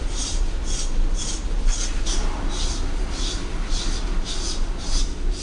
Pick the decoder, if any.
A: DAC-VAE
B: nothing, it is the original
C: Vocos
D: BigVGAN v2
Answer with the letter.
B